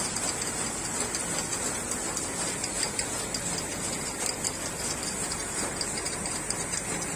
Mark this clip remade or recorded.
recorded